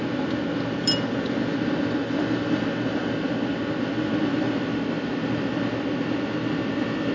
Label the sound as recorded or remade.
recorded